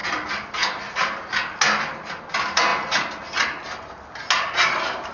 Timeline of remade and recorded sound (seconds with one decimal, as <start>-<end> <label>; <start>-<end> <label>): 0.0-5.1 recorded